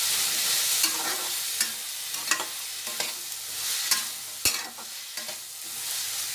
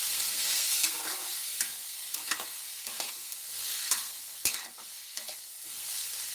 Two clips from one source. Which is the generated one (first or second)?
second